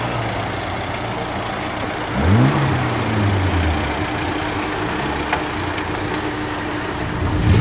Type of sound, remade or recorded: recorded